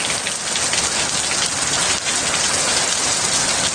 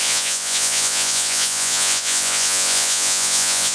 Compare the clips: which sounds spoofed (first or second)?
second